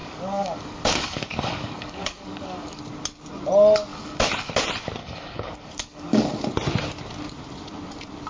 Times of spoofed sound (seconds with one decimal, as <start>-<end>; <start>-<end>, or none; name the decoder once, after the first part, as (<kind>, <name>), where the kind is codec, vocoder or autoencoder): 0.0-2.8 (codec, DAC); 3.9-4.5; 5.0-6.4

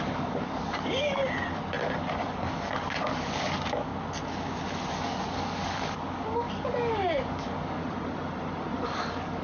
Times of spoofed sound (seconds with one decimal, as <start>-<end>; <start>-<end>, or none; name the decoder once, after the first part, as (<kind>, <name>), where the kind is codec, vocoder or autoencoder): 0.0-1.2 (codec, DAC); 2.1-3.9; 4.9-7.8; 8.8-9.4